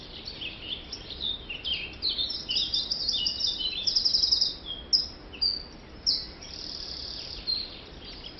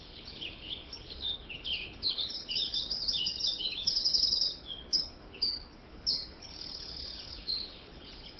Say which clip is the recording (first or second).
first